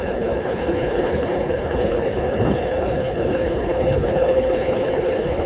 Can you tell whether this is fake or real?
fake